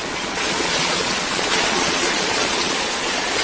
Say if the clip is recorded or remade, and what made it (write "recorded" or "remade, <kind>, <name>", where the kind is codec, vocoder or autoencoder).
remade, vocoder, Vocos